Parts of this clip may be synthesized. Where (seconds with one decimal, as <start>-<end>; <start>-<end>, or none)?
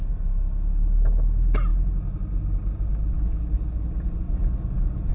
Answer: none